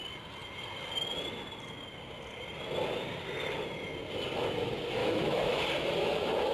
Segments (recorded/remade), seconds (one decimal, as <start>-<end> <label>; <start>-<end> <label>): 0.0-5.0 recorded; 5.0-5.6 remade; 5.6-6.5 recorded